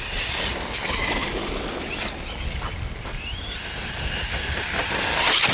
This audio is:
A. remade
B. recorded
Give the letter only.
B